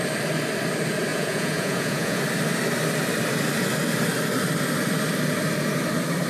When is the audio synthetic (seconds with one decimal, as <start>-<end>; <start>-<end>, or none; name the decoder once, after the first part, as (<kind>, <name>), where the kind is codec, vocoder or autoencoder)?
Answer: 1.1-2.2 (vocoder, Vocos)